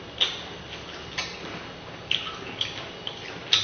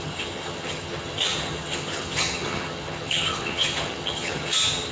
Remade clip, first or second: second